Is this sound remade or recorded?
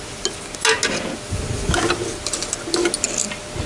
recorded